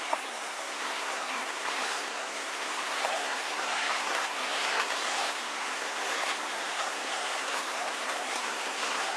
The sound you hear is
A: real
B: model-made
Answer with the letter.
B